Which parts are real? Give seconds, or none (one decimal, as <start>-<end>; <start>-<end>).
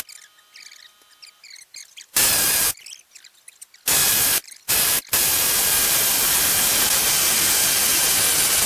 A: 0.0-1.8; 2.5-4.0; 4.7-5.8; 6.7-8.7